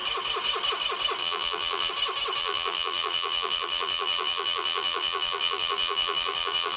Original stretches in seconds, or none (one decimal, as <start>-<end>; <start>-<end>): 0.0-1.2; 1.9-2.4